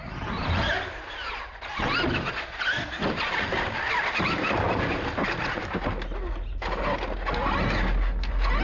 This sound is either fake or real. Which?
real